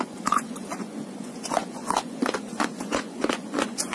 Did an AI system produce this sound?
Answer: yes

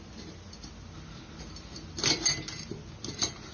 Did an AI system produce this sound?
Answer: no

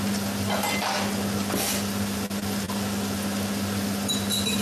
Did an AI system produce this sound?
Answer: no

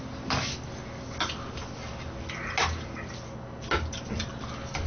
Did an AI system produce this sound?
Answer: no